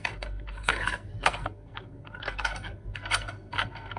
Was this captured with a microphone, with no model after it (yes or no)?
no